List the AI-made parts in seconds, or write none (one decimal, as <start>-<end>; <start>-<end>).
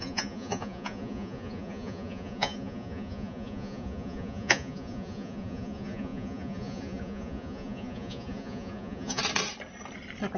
0.0-9.2